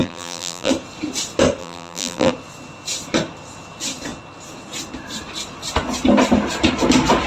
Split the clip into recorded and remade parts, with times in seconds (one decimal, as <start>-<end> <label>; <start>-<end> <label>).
0.0-0.7 remade; 0.7-1.6 recorded; 1.6-2.3 remade; 2.3-7.3 recorded